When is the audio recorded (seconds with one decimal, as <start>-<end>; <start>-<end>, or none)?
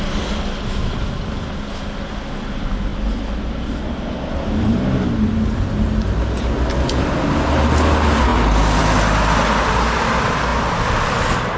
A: 0.0-11.6